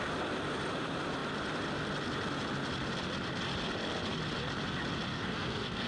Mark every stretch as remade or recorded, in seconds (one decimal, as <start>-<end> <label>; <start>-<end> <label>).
0.0-5.1 recorded; 5.1-5.9 remade